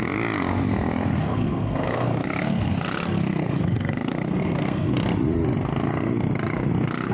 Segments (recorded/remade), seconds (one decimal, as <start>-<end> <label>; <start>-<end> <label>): 0.0-1.2 recorded; 1.2-4.9 remade; 4.9-7.1 recorded